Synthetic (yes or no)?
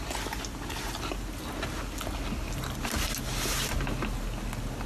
no